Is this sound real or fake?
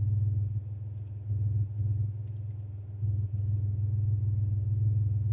real